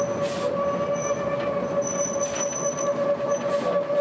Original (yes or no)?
yes